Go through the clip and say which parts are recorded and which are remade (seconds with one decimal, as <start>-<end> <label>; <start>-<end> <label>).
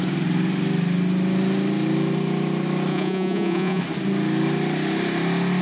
0.0-2.9 recorded; 2.9-3.8 remade; 3.8-5.6 recorded